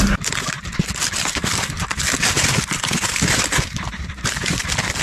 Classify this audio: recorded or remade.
remade